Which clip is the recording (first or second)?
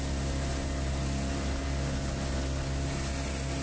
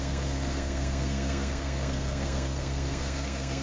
first